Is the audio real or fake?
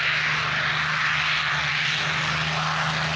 real